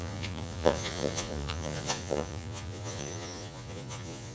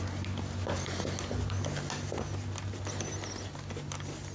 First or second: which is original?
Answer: second